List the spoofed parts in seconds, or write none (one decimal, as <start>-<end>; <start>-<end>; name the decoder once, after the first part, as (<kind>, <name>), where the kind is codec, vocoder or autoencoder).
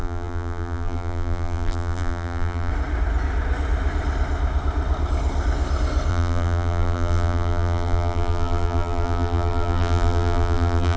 0.0-2.7 (vocoder, BigVGAN v2); 6.1-11.0